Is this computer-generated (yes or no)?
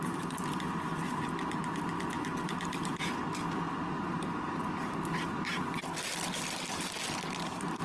no